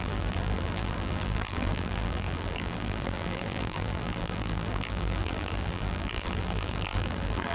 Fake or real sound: fake